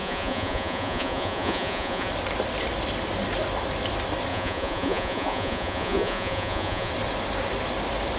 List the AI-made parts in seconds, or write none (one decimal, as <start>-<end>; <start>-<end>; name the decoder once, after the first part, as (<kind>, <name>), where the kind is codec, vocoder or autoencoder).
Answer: 0.0-2.1 (vocoder, Vocos); 4.3-6.9